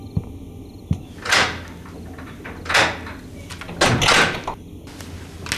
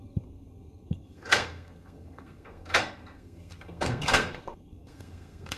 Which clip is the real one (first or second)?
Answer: first